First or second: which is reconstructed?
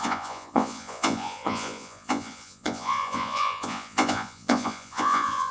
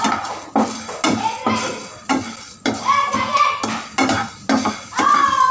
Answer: first